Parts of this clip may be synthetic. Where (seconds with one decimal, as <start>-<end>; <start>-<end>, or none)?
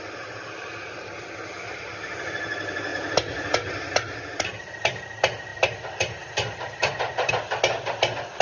2.9-3.5; 5.5-7.3